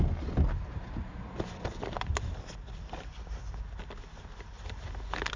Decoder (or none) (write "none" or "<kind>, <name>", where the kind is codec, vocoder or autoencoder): none